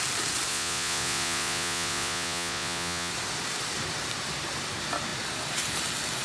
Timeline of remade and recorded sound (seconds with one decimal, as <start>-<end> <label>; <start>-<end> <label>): 0.0-0.5 recorded; 0.5-3.1 remade; 3.1-6.2 recorded